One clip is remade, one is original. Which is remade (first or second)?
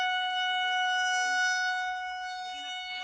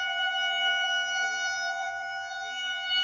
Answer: second